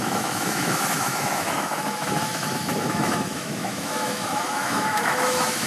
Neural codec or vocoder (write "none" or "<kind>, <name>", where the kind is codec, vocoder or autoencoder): autoencoder, DAC-VAE